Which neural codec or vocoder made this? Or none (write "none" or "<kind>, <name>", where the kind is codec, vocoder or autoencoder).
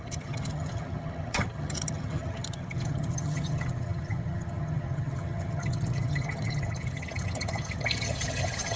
vocoder, HiFi-GAN